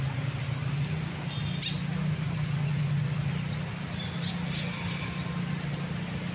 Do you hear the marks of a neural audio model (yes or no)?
no